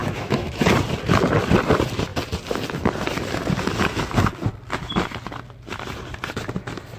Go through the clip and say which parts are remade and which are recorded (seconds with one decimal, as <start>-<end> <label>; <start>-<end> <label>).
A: 0.0-0.7 remade; 0.7-7.0 recorded